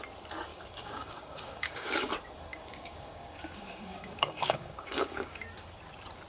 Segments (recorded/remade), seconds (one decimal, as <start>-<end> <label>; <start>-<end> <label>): 0.0-0.5 recorded; 0.5-2.1 remade; 2.1-2.5 recorded; 2.5-5.4 remade; 5.4-6.3 recorded